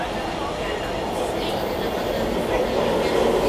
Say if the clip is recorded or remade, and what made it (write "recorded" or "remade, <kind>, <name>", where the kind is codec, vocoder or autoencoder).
recorded